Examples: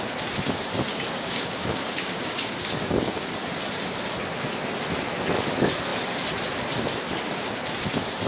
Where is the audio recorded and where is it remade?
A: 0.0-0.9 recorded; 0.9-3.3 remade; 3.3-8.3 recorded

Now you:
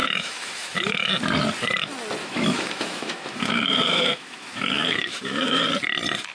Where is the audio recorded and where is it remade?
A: 0.0-1.1 remade; 1.1-2.2 recorded; 2.2-5.6 remade; 5.6-6.3 recorded

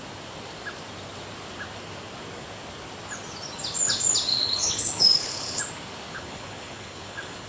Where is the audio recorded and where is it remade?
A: 0.0-4.3 recorded; 4.3-5.6 remade; 5.6-6.1 recorded; 6.1-7.5 remade

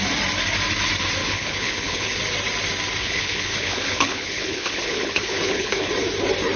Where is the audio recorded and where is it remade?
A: 0.0-1.2 recorded; 1.2-2.2 remade; 2.2-3.0 recorded; 3.0-5.9 remade; 5.9-6.6 recorded

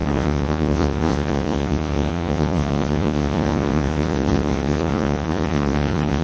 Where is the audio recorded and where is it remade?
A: 0.0-6.2 remade

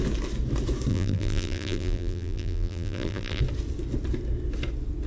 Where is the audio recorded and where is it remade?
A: 0.0-0.9 recorded; 0.9-3.4 remade; 3.4-5.1 recorded